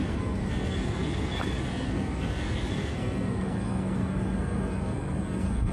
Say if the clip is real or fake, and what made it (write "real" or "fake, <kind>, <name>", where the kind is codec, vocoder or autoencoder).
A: fake, codec, SNAC